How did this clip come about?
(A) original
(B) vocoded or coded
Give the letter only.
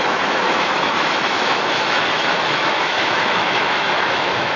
B